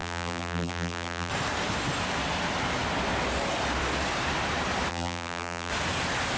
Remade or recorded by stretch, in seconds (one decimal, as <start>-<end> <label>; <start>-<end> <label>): 0.0-1.3 remade; 1.3-4.9 recorded; 4.9-5.7 remade; 5.7-6.4 recorded